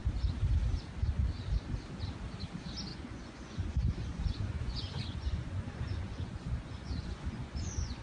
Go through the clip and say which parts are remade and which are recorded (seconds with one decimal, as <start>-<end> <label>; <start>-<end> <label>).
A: 0.0-2.9 recorded; 2.9-8.0 remade